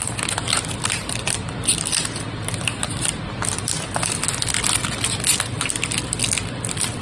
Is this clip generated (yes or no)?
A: no